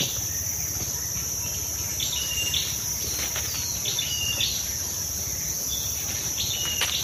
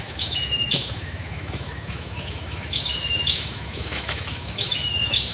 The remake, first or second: second